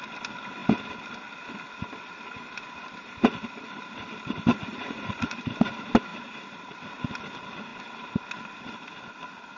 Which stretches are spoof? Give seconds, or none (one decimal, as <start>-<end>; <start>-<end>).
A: 4.5-5.4